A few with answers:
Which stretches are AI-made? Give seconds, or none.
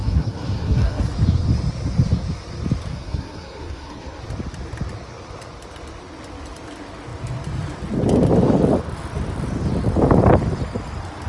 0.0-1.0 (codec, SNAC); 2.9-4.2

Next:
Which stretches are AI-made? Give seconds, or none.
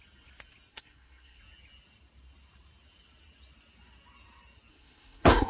0.7-1.4 (codec, SNAC); 4.7-5.5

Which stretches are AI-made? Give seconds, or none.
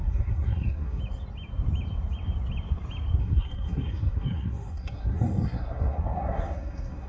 0.0-1.0 (codec, SNAC); 3.2-7.1